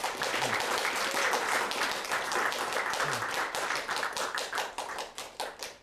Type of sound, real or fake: real